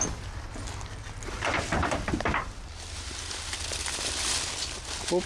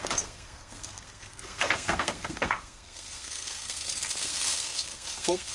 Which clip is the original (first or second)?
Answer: first